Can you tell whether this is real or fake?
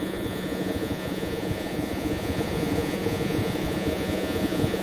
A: fake